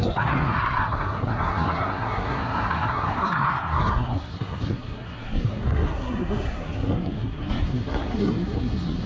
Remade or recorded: remade